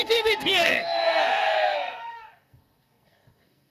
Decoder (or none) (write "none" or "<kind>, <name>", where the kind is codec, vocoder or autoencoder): codec, SNAC